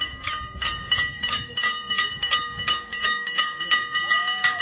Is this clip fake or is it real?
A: fake